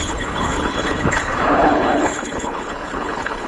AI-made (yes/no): yes